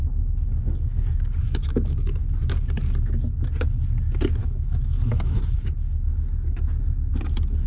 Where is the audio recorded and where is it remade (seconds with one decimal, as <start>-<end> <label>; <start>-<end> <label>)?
0.0-1.4 recorded; 1.4-2.2 remade; 2.2-4.4 recorded; 4.4-5.4 remade; 5.4-7.7 recorded